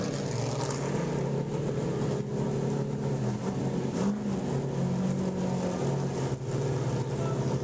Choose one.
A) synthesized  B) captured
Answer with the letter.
B